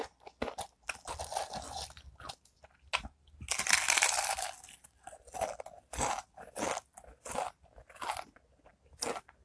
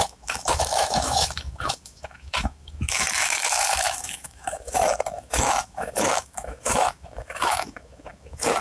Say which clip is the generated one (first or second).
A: second